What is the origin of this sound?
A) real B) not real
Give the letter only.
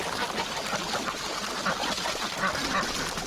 A